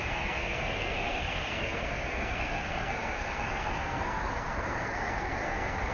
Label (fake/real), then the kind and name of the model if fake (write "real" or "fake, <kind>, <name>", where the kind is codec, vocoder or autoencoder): fake, codec, SNAC